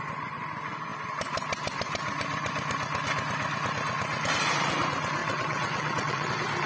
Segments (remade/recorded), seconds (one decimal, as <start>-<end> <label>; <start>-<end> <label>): 0.0-5.2 recorded; 5.2-6.3 remade; 6.3-6.7 recorded